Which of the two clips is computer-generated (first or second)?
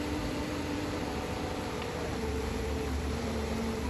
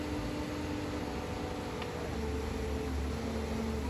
first